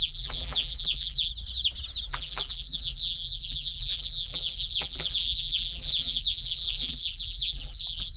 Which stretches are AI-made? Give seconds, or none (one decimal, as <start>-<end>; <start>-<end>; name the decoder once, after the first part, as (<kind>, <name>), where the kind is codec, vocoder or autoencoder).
0.0-1.3 (vocoder, BigVGAN v2); 2.1-8.2